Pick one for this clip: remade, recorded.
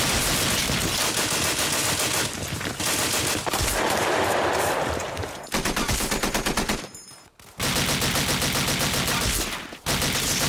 recorded